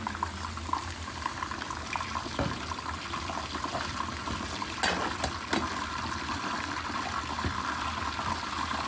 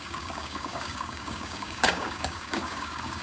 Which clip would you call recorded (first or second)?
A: first